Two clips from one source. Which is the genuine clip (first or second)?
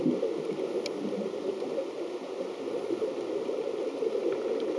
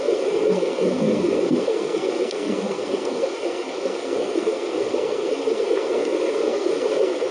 first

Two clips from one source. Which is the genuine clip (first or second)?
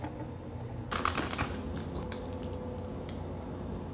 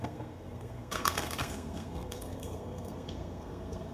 first